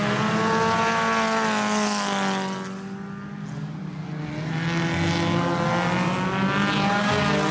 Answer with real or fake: real